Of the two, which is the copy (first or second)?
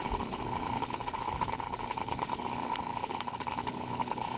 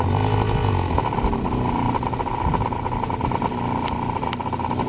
first